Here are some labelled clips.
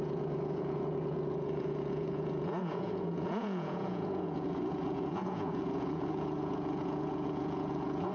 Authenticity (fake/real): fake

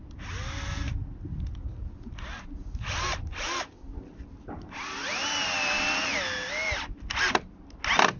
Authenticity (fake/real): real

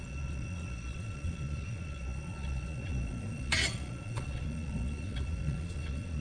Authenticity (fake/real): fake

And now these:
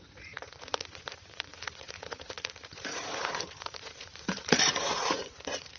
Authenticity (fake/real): fake